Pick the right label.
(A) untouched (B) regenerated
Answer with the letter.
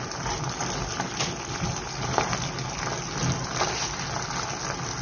A